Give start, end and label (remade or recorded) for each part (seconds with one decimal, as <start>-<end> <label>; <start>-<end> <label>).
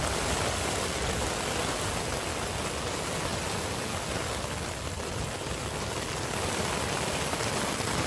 0.0-8.1 recorded